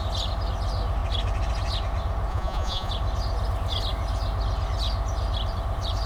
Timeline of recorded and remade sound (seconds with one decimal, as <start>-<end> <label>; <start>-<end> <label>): 0.0-2.3 recorded; 2.3-2.9 remade; 2.9-6.1 recorded